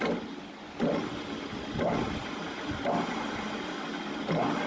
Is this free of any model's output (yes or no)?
yes